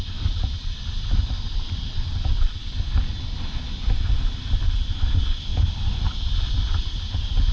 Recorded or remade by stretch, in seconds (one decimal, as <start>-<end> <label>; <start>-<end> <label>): 0.0-2.6 remade; 2.6-4.2 recorded; 4.2-5.5 remade; 5.5-6.5 recorded; 6.5-7.5 remade